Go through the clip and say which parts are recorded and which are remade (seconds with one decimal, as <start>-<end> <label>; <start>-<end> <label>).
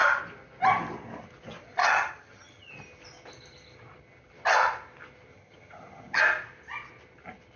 0.0-1.8 recorded; 1.8-2.7 remade; 2.7-5.3 recorded; 5.3-6.2 remade; 6.2-7.6 recorded